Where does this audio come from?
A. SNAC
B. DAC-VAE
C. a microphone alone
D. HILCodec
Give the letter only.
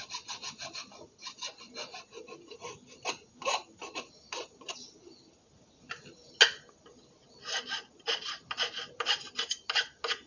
C